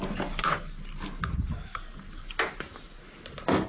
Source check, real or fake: real